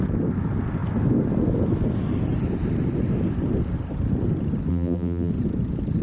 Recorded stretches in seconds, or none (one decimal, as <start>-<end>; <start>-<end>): 0.0-4.7; 5.3-6.0

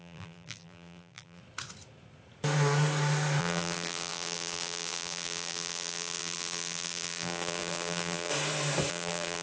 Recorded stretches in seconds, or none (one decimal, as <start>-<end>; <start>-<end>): 1.4-3.4; 8.3-8.9

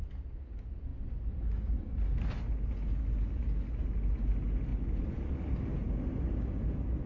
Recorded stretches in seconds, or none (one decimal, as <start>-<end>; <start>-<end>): 0.0-7.1

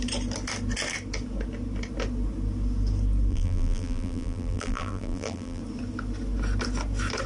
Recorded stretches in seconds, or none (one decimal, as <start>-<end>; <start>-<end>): 0.0-3.3; 5.6-7.3

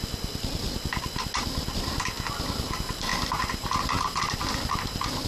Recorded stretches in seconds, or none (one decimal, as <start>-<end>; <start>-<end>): 0.0-3.1; 4.2-5.3

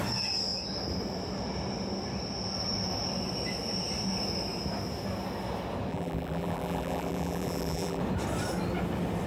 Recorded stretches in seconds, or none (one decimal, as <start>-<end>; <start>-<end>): 0.0-5.9; 8.0-9.3